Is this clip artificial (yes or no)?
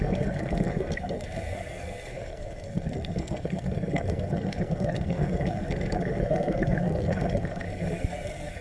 yes